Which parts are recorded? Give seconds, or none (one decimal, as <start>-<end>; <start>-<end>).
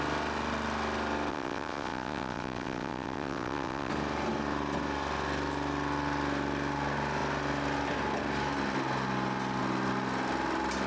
0.0-1.3; 3.9-10.9